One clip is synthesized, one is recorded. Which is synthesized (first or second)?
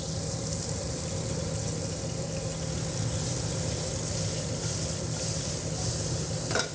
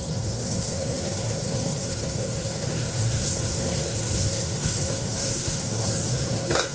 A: second